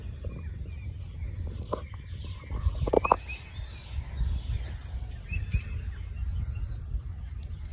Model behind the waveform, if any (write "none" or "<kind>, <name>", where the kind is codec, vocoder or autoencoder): none